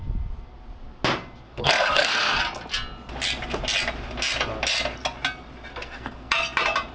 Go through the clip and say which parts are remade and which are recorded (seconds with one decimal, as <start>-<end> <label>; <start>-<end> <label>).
0.0-1.5 recorded; 1.5-2.4 remade; 2.4-5.7 recorded; 5.7-6.3 remade; 6.3-6.9 recorded